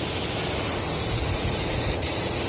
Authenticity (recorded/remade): remade